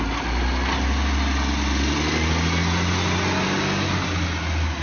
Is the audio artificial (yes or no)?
no